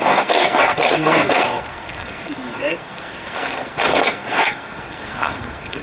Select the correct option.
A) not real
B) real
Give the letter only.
A